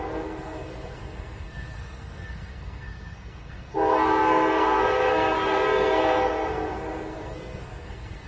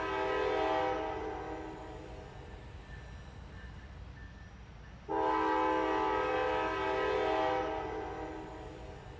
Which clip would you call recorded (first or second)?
second